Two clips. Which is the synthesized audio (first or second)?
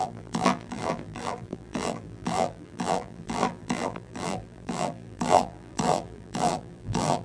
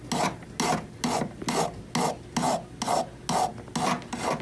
first